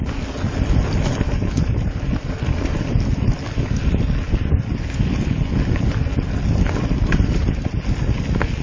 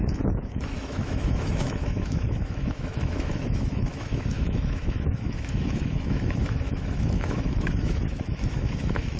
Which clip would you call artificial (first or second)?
second